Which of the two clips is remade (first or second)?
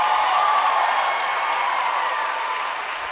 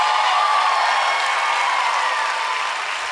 first